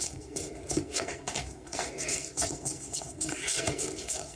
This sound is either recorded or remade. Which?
remade